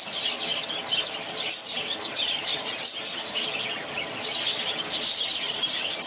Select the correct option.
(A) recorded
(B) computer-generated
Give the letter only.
A